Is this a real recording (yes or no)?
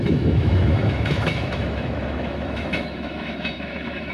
no